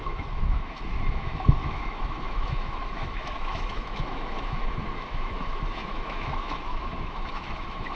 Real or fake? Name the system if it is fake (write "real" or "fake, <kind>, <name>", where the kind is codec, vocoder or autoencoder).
fake, autoencoder, DAC-VAE